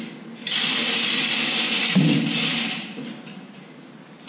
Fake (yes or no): no